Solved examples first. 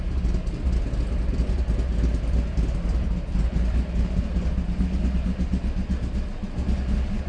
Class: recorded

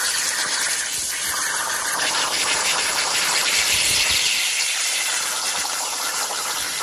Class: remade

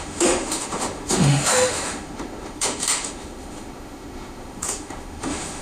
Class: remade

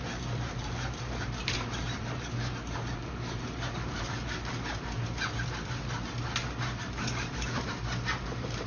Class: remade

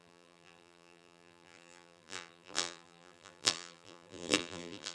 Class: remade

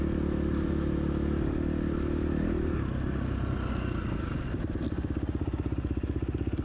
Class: recorded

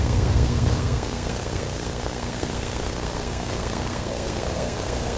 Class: remade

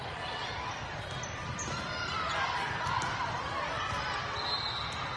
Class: remade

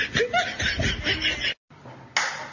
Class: recorded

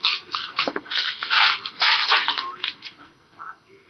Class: remade